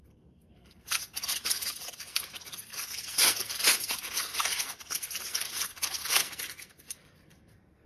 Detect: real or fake fake